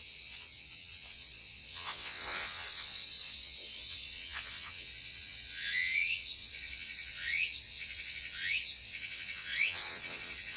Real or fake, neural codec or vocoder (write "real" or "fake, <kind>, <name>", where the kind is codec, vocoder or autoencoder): fake, vocoder, WaveNeXt